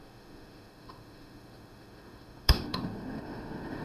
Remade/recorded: remade